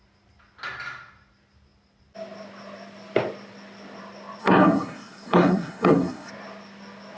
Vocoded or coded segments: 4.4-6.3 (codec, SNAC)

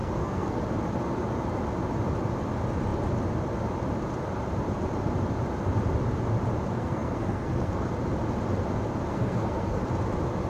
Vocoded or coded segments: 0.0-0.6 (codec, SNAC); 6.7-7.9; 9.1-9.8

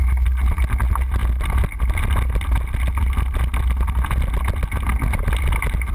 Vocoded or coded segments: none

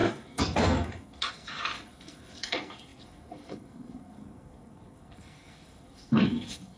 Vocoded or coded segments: 0.0-6.8 (codec, SNAC)